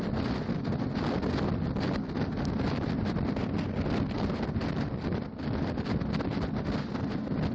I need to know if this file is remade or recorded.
recorded